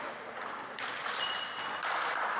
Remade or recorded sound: recorded